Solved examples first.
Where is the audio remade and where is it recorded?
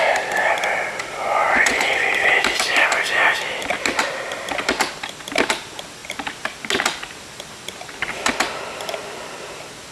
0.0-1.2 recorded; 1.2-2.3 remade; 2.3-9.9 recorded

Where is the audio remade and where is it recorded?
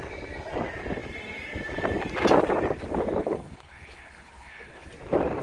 0.0-3.2 recorded; 3.2-4.9 remade; 4.9-5.4 recorded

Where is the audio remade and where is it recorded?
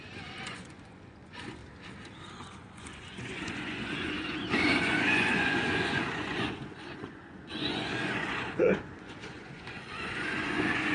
0.0-1.6 remade; 1.6-2.4 recorded; 2.4-10.9 remade